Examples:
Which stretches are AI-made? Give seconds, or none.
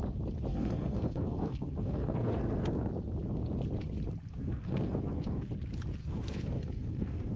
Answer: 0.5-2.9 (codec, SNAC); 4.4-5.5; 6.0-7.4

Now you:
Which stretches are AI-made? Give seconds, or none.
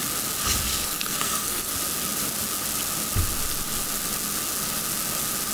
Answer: 0.7-1.7 (codec, SNAC)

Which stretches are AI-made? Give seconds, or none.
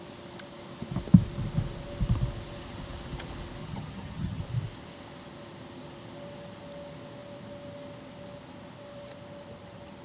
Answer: 3.6-4.4 (vocoder, HiFi-GAN)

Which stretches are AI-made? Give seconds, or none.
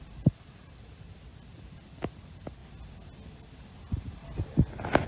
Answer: none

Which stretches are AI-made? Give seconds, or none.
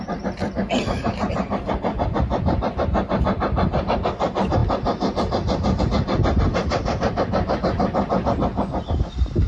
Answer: none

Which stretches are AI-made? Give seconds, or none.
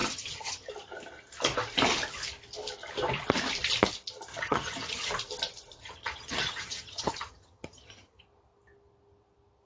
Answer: 0.0-0.7 (vocoder, HiFi-GAN); 4.3-5.1; 5.8-8.2